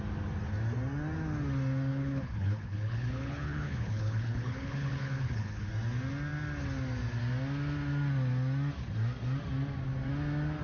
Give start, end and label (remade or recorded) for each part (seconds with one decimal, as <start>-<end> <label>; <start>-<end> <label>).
0.0-1.9 recorded; 1.9-5.7 remade; 5.7-10.6 recorded